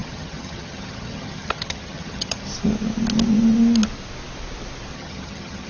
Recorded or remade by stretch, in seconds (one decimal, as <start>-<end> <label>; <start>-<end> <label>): 0.0-2.5 remade; 2.5-4.9 recorded; 4.9-5.7 remade